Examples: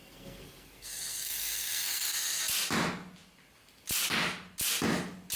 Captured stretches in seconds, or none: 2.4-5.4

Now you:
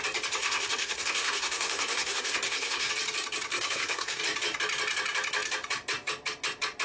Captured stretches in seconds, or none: 0.0-0.4; 2.9-3.5; 4.2-6.8

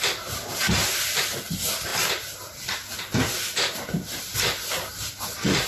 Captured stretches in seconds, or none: 0.0-5.7

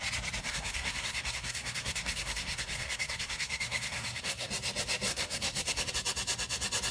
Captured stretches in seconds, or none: 0.0-0.4; 4.5-5.1; 5.8-6.9

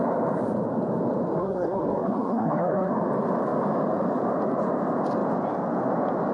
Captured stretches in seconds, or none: 0.0-1.4; 2.9-6.3

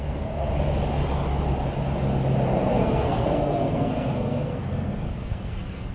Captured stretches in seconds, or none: 0.5-2.7

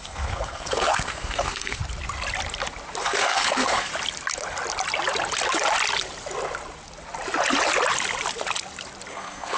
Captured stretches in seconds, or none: 1.8-3.0; 3.9-9.1

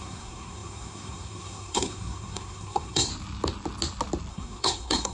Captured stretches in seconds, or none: 3.1-4.3